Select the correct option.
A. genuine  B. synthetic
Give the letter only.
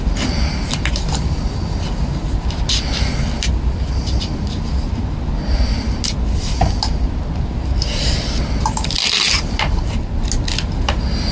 A